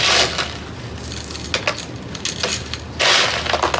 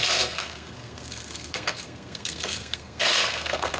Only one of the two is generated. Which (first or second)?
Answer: second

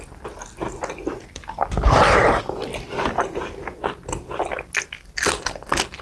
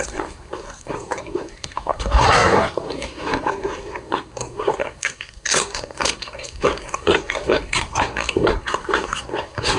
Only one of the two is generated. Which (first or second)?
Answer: second